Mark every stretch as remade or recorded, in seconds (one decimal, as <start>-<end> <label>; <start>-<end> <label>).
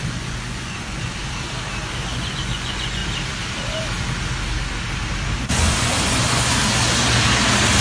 0.0-1.1 remade; 1.1-2.0 recorded; 2.0-3.0 remade; 3.0-5.4 recorded; 5.4-6.6 remade; 6.6-7.8 recorded